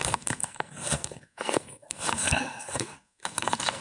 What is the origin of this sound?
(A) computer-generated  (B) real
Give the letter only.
A